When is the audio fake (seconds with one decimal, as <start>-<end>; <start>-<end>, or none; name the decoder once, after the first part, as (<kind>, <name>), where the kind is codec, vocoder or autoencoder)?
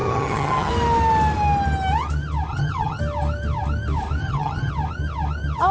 0.0-0.7 (vocoder, HiFi-GAN); 2.5-3.0; 4.2-4.7